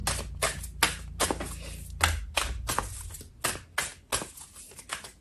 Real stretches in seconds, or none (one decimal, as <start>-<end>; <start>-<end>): 0.0-5.2